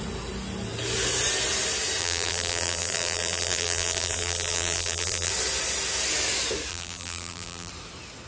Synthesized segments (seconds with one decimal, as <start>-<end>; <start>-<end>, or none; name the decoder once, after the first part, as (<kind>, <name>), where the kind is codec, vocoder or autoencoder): 2.0-5.3 (vocoder, BigVGAN v2); 6.7-7.7